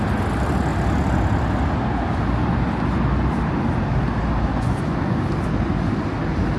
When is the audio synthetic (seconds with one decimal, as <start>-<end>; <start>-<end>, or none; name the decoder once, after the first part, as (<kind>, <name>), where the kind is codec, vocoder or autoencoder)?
4.5-5.2 (vocoder, Vocos)